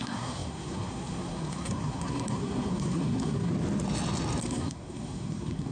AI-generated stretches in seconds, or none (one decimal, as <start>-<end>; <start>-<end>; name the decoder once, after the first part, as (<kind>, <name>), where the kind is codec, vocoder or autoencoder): 0.0-3.5 (codec, SNAC); 4.4-5.7